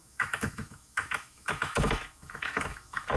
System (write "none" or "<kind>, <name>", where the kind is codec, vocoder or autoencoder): autoencoder, DAC-VAE